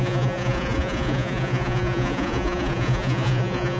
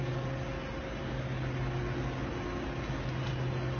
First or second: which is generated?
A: first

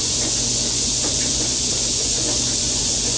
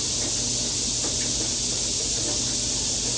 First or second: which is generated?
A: first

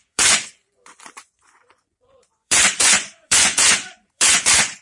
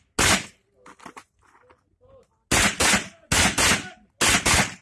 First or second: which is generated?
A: first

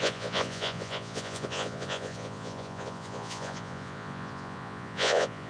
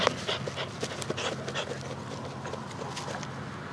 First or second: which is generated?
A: first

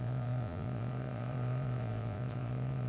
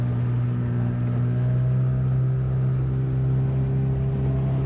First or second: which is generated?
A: first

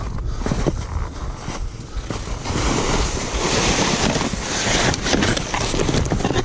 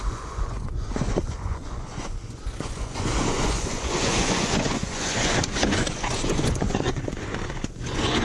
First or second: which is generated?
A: second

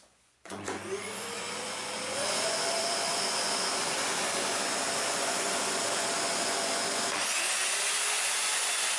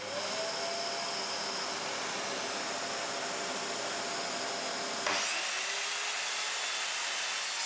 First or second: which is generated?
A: first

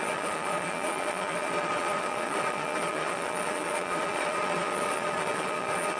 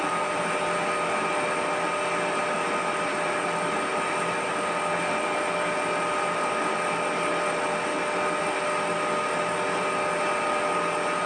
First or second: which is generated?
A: first